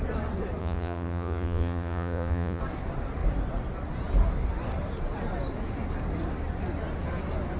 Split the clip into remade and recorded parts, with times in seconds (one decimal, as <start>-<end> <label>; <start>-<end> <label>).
0.0-0.6 recorded; 0.6-2.6 remade; 2.6-7.6 recorded